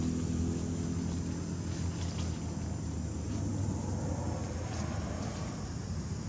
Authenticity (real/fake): real